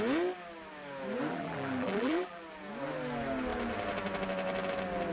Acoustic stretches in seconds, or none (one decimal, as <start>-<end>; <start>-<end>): 0.0-1.3; 2.4-5.1